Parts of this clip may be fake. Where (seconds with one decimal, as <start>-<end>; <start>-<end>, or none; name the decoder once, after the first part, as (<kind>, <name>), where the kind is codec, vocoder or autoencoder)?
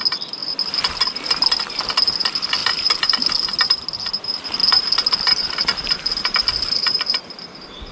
none